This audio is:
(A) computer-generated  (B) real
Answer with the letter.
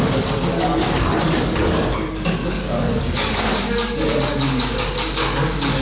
A